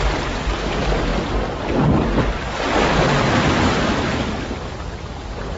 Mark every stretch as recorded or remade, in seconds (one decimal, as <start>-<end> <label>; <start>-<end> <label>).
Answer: 0.0-5.6 recorded